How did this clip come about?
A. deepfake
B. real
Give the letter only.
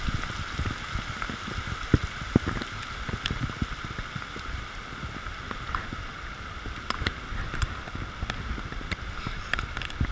B